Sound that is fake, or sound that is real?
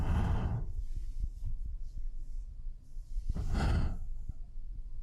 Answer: real